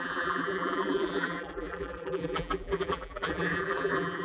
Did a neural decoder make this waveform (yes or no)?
yes